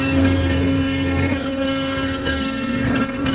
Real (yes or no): no